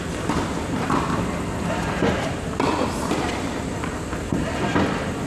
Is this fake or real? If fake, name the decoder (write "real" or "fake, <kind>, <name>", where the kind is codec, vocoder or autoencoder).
real